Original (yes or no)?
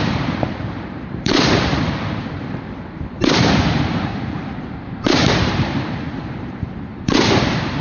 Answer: no